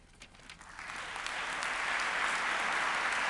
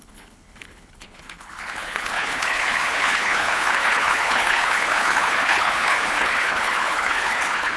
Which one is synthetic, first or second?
second